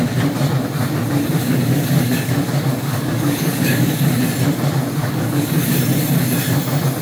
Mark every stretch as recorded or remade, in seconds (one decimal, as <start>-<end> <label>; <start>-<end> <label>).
0.0-1.4 recorded; 1.4-4.0 remade; 4.0-5.0 recorded; 5.0-5.8 remade; 5.8-7.0 recorded